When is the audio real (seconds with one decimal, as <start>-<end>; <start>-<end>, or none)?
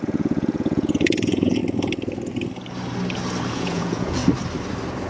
1.6-3.5; 4.2-5.1